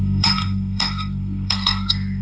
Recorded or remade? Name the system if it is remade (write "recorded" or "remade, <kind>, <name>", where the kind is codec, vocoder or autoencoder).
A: remade, codec, SNAC